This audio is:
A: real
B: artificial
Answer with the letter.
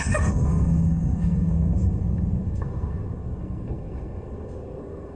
B